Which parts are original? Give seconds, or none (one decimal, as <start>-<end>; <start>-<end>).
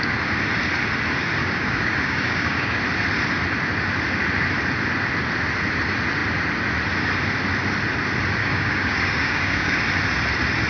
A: 0.0-1.4; 2.8-8.4; 9.8-10.7